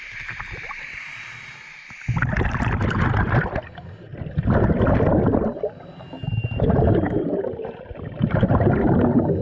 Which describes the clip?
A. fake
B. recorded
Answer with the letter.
B